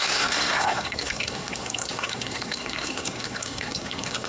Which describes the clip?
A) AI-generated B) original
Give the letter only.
A